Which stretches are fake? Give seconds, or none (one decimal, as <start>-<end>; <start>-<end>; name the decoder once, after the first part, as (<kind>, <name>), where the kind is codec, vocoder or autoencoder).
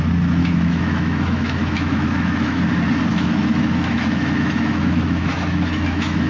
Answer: 0.4-2.6 (autoencoder, DAC-VAE); 3.1-6.3